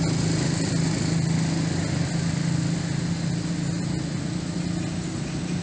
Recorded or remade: recorded